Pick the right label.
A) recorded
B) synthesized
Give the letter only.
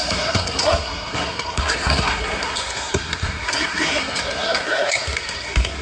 B